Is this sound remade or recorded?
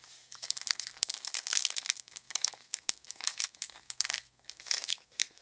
remade